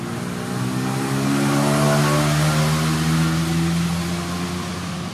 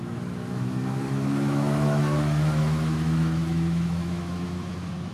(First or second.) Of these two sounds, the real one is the first